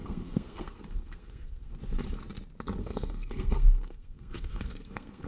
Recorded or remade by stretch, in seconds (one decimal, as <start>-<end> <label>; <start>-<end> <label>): 0.0-1.7 remade; 1.7-2.8 recorded; 2.8-5.3 remade